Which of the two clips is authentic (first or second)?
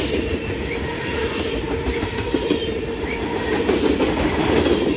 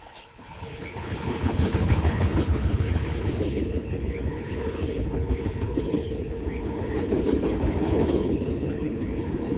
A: first